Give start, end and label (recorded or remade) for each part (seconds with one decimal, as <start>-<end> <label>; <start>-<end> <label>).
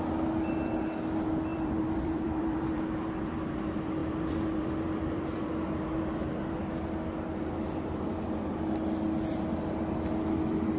0.0-1.5 recorded; 1.5-3.5 remade; 3.5-4.0 recorded; 4.0-6.5 remade; 6.5-10.8 recorded